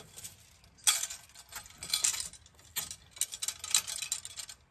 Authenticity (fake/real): real